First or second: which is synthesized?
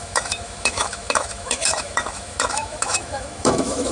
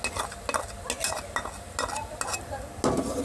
first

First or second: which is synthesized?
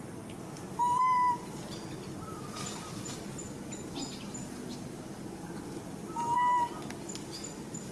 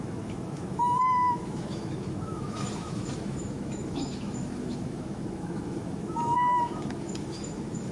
second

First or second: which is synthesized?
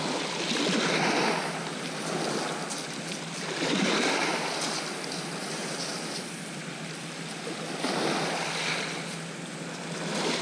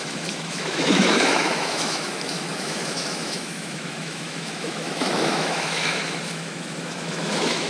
second